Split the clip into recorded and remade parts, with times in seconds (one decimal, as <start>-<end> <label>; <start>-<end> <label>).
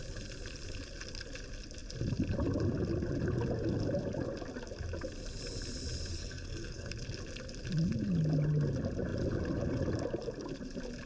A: 0.0-6.1 recorded; 6.1-6.9 remade; 6.9-11.1 recorded